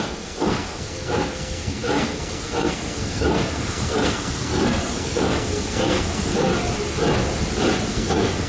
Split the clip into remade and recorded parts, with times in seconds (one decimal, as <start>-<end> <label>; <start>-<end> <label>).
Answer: 0.0-6.5 remade; 6.5-7.9 recorded; 7.9-8.5 remade

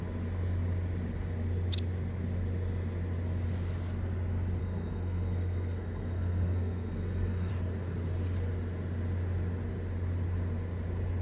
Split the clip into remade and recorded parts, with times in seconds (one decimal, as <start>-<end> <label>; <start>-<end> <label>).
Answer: 0.0-4.6 recorded; 4.6-7.5 remade; 7.5-11.2 recorded

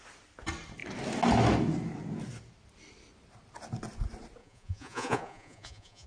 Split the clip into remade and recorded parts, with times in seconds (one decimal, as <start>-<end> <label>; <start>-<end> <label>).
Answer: 0.0-4.4 recorded; 4.4-6.1 remade

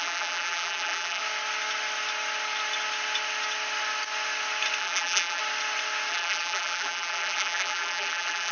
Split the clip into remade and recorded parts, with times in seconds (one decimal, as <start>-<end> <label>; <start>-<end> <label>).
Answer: 0.0-1.2 remade; 1.2-4.8 recorded; 4.8-5.4 remade; 5.4-6.1 recorded; 6.1-8.5 remade